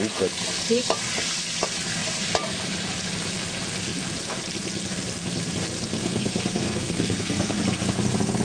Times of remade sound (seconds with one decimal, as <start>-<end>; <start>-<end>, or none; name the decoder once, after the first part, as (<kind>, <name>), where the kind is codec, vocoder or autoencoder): 6.0-7.6 (codec, SNAC)